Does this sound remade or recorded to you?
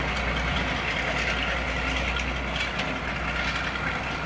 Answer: recorded